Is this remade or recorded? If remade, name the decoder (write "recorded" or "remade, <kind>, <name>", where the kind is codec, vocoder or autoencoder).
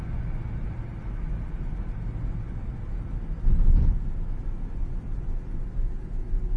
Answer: recorded